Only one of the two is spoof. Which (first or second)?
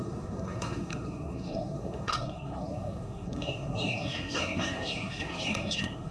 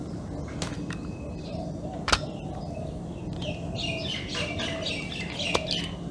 first